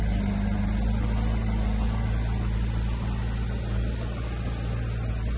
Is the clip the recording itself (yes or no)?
yes